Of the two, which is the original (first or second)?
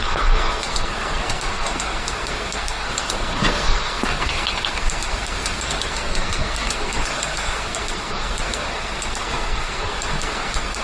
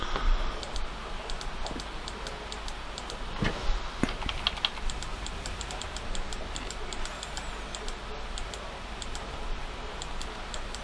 second